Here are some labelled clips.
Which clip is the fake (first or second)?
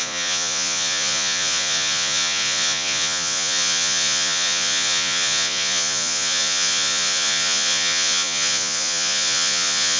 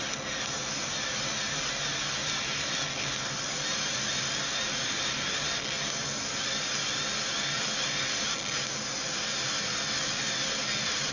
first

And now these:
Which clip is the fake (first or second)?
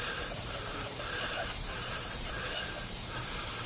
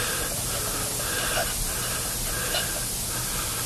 first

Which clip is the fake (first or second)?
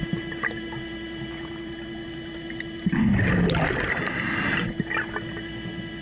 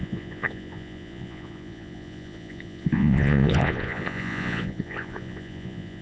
second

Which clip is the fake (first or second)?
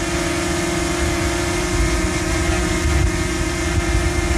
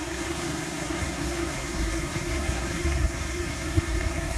second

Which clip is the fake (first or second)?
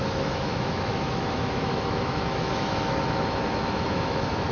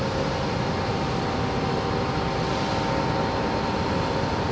first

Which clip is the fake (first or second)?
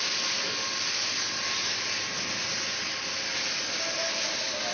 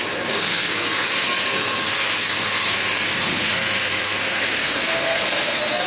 second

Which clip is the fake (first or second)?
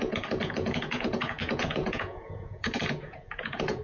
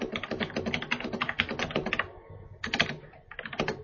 first